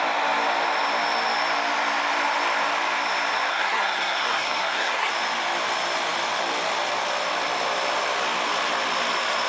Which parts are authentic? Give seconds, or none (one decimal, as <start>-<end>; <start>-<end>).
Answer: 0.0-3.5; 5.1-9.5